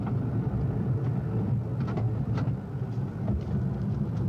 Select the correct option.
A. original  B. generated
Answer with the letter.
A